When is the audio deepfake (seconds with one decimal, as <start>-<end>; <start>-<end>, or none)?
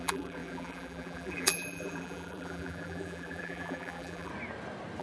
0.0-4.3